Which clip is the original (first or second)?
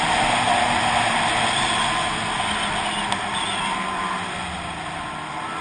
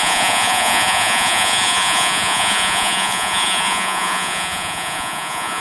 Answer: first